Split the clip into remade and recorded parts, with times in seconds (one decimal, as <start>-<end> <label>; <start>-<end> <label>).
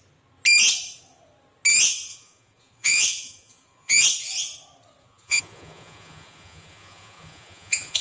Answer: 0.0-2.1 recorded; 2.1-4.0 remade; 4.0-5.0 recorded; 5.0-8.0 remade